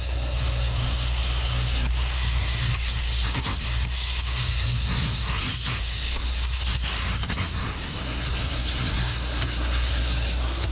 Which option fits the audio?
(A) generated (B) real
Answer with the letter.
A